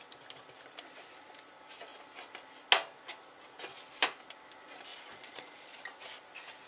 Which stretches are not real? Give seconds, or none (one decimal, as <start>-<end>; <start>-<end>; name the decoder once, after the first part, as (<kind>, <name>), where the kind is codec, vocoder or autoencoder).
4.9-5.8 (vocoder, Vocos)